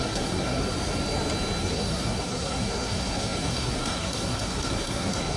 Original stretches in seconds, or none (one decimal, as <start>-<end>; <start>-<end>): 0.6-1.6